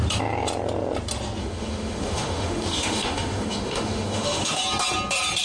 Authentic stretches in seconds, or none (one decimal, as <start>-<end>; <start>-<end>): 0.0-1.4; 4.6-5.4